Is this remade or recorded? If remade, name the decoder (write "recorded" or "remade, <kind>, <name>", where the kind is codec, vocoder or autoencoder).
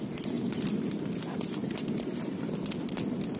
recorded